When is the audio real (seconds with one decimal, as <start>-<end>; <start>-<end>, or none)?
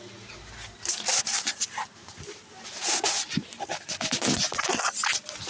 0.0-5.5